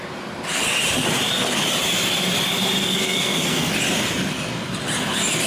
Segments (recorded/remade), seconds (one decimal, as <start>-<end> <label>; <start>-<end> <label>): 0.0-2.8 recorded; 2.8-3.7 remade; 3.7-5.5 recorded